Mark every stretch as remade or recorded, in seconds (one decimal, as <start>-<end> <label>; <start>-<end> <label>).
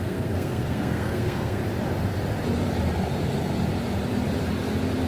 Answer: 0.0-1.6 remade; 1.6-5.1 recorded